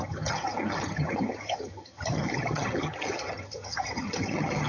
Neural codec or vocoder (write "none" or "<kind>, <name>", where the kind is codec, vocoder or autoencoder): vocoder, HiFi-GAN